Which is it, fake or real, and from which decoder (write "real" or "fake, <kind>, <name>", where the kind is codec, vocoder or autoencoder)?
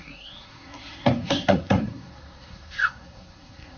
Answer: fake, codec, SNAC